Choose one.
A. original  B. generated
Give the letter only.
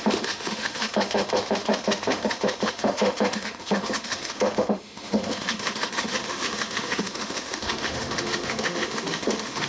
B